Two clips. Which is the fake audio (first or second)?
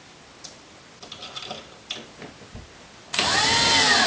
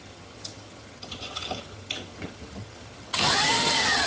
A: second